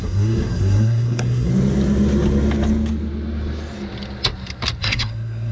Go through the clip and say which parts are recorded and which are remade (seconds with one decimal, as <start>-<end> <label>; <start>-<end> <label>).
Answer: 0.0-1.5 remade; 1.5-4.8 recorded; 4.8-5.5 remade